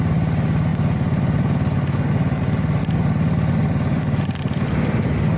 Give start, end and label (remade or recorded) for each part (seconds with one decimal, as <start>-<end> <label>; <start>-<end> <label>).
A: 0.0-5.4 recorded